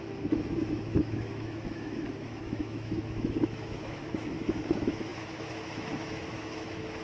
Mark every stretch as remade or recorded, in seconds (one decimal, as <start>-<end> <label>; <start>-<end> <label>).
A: 0.0-7.0 remade